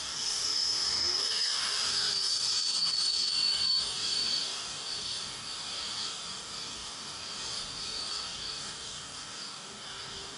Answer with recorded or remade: remade